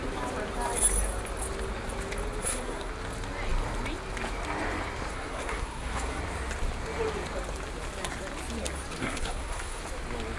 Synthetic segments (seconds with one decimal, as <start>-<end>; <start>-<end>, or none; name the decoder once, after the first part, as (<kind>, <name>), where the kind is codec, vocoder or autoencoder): 2.4-2.9 (codec, SNAC); 5.1-6.2; 9.0-9.8